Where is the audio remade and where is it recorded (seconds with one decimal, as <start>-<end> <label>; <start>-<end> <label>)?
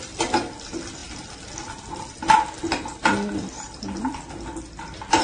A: 0.0-5.2 recorded